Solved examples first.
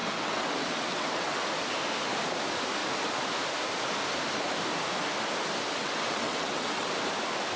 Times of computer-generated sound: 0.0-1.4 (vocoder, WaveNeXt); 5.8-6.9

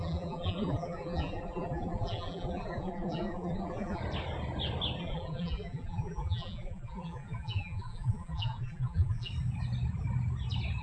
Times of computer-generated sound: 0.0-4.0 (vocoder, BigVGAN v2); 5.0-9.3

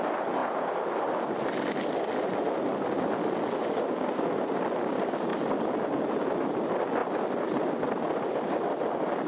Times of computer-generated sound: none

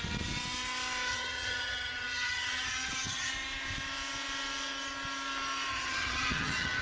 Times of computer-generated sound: 1.1-3.3 (vocoder, HiFi-GAN); 5.7-6.8